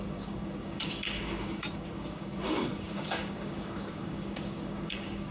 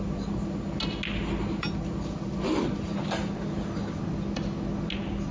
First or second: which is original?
second